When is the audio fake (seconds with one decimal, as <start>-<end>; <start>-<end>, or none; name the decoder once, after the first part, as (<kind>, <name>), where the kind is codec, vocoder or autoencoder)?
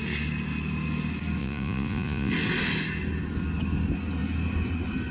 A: 1.4-2.3 (vocoder, Vocos)